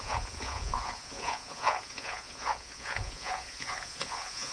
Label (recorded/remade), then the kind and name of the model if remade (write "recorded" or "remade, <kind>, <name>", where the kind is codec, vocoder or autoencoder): remade, vocoder, Vocos